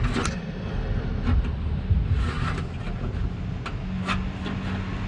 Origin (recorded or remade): recorded